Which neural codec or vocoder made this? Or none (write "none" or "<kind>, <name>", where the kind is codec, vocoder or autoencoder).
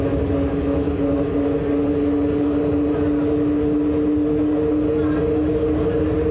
none